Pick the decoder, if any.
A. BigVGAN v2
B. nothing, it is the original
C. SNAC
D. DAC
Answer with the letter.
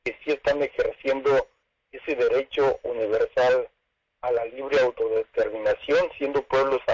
B